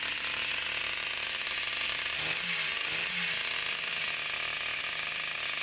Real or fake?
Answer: real